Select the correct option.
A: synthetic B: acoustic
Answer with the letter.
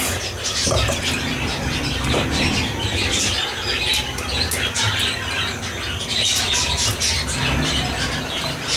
B